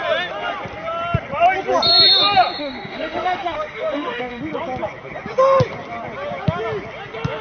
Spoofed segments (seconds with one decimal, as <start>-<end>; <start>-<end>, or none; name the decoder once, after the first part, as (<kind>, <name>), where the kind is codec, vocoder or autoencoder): 2.6-4.4 (autoencoder, DAC-VAE)